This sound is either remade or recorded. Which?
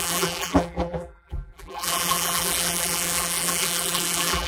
remade